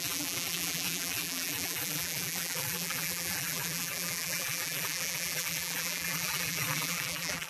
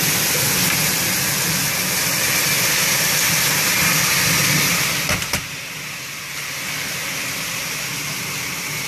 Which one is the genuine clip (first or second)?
second